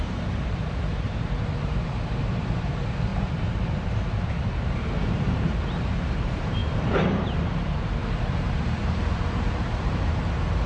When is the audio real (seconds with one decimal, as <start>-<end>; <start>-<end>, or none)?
none